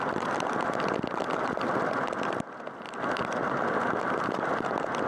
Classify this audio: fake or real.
real